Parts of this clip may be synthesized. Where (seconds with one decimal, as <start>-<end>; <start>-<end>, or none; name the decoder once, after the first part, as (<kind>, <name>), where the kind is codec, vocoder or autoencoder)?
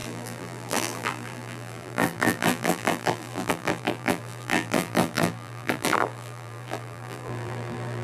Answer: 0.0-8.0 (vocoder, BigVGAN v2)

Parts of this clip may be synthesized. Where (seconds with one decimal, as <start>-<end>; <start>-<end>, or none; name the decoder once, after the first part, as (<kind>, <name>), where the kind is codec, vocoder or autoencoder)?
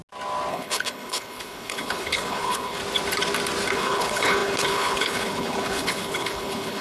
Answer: 0.5-2.8 (codec, HILCodec); 3.7-6.8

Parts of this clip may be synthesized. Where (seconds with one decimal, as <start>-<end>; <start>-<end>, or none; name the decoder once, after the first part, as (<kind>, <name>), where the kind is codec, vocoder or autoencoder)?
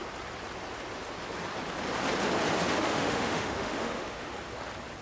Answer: 2.8-4.3 (autoencoder, DAC-VAE)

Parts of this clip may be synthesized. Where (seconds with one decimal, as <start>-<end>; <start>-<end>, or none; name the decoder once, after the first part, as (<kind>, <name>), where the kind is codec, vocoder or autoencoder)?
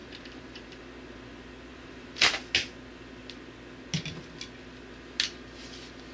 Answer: 0.0-0.8 (vocoder, BigVGAN v2); 1.7-2.5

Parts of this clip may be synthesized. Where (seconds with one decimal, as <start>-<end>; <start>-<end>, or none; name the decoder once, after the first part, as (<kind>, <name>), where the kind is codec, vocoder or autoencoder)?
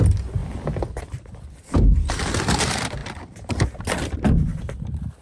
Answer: 0.4-2.6 (vocoder, BigVGAN v2)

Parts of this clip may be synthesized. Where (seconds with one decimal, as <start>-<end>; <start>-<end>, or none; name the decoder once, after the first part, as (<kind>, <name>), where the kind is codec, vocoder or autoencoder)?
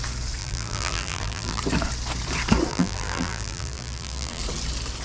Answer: 0.4-1.6 (vocoder, BigVGAN v2); 2.7-4.4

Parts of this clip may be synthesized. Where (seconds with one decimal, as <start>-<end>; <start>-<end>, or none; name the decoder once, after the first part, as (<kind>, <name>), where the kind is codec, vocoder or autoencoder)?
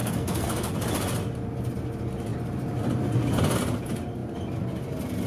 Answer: 0.0-0.7 (codec, SNAC)